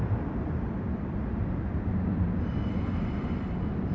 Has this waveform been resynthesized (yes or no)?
no